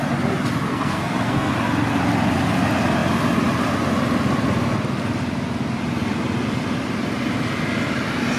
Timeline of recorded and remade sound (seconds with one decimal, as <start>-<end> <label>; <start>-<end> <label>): 0.0-0.7 recorded; 0.7-1.5 remade; 1.5-8.4 recorded